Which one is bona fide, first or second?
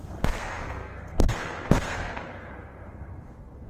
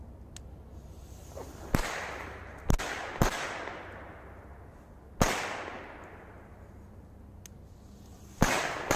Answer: second